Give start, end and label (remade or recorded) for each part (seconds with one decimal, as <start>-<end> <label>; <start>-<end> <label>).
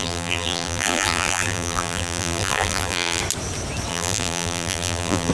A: 0.0-3.2 remade; 3.2-3.9 recorded; 3.9-5.3 remade